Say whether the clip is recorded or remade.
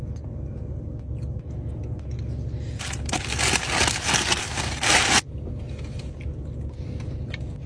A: recorded